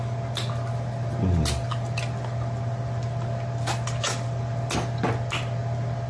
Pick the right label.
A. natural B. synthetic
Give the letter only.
A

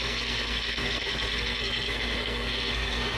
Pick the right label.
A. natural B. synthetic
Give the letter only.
B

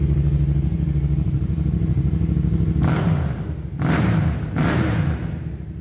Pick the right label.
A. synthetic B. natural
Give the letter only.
B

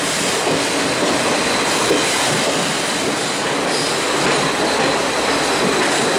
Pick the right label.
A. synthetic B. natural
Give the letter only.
B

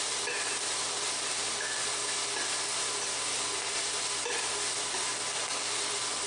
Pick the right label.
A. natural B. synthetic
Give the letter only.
A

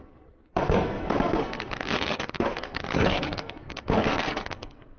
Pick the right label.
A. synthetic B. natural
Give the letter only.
A